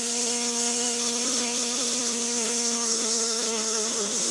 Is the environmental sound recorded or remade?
remade